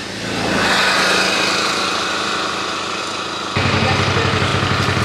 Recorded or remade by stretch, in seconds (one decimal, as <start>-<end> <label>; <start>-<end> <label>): 0.0-5.0 recorded